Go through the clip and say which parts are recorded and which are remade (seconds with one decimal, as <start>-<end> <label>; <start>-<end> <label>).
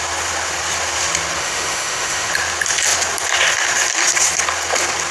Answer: 0.0-1.4 recorded; 1.4-2.3 remade; 2.3-5.1 recorded